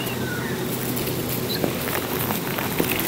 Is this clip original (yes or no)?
yes